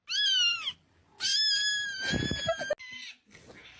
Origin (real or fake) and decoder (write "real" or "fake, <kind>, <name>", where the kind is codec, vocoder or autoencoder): real